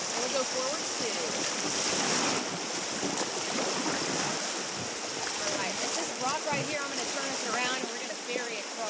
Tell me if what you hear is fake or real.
real